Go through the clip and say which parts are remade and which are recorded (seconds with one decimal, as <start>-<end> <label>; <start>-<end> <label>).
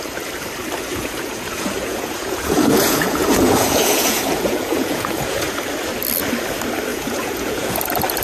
0.0-0.9 recorded; 0.9-5.6 remade; 5.6-6.9 recorded; 6.9-7.7 remade; 7.7-8.2 recorded